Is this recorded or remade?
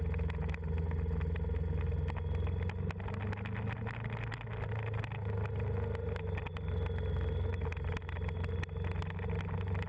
recorded